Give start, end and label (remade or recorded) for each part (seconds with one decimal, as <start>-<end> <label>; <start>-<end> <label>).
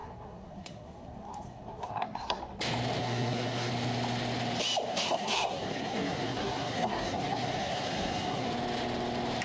0.0-2.4 remade; 2.4-3.0 recorded; 3.0-3.7 remade; 3.7-4.9 recorded; 4.9-8.5 remade; 8.5-9.4 recorded